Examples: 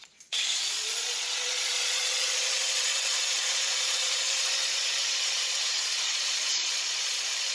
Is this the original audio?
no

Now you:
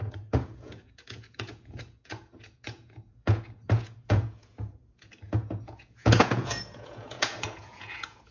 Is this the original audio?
no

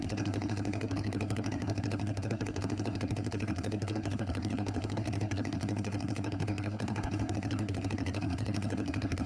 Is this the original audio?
no